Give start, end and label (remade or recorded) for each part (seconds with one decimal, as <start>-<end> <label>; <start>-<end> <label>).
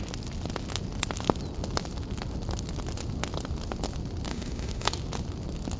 0.0-4.3 recorded; 4.3-4.9 remade; 4.9-5.8 recorded